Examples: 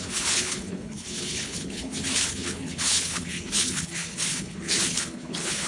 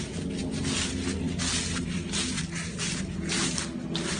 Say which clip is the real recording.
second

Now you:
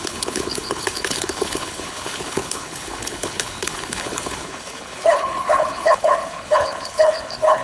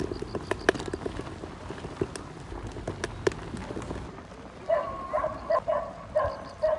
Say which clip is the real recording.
second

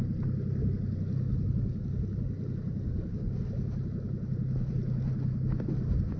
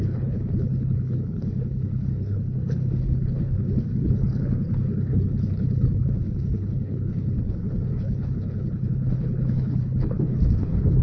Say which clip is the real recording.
first